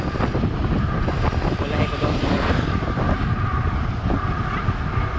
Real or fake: real